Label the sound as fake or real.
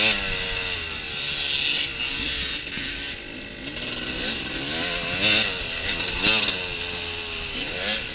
real